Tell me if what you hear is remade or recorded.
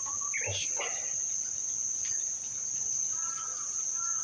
recorded